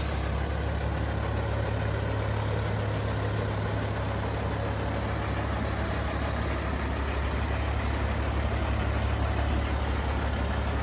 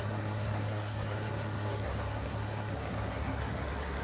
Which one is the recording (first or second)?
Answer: first